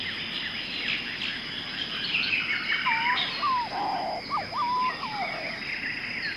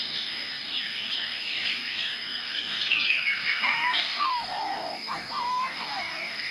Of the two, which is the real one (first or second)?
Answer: first